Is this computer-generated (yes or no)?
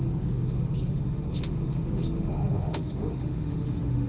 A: yes